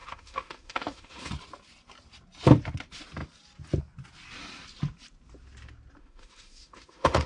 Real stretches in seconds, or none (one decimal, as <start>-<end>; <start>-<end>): 1.3-6.0